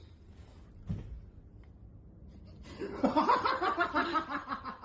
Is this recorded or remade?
recorded